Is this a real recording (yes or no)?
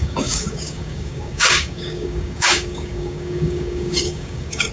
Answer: no